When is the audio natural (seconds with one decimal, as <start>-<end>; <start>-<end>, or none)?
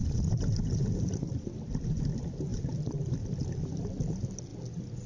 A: 0.0-5.1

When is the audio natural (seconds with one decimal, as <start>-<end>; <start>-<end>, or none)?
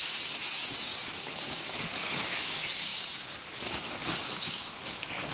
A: none